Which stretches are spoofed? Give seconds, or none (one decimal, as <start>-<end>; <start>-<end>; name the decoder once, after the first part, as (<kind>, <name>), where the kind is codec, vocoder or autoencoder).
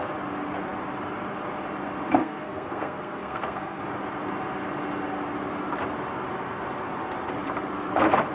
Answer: 2.2-3.8 (codec, SNAC)